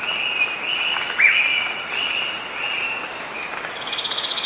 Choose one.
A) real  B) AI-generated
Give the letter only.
A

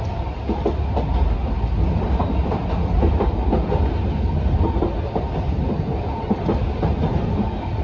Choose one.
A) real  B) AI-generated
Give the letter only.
A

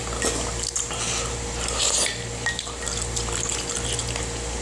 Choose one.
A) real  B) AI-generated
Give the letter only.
A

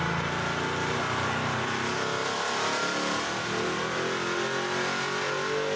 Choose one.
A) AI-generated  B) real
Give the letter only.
B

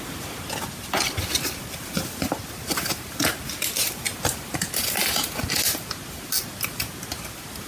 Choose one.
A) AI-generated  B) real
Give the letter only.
B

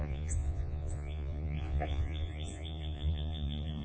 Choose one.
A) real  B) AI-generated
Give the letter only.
B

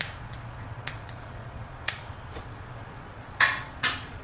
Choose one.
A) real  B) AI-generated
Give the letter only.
B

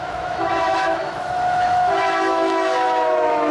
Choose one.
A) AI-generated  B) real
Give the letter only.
A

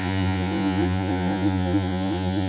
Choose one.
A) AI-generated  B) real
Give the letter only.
A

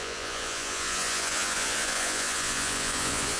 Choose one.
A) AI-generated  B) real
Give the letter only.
A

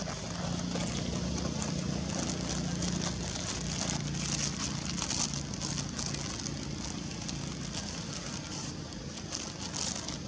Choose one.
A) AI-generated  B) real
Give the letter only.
B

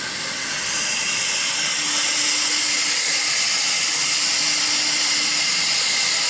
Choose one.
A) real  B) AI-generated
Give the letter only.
A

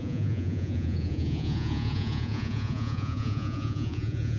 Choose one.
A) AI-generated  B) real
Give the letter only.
A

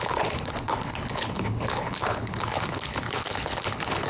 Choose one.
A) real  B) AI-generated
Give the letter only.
B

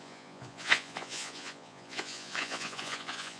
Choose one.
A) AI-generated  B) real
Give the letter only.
A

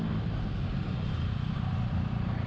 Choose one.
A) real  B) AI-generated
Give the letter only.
A